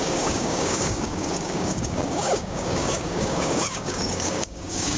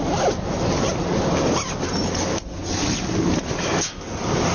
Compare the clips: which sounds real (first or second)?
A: second